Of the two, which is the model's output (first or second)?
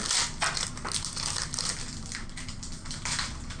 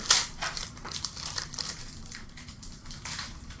second